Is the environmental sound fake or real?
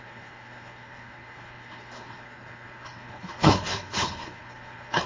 fake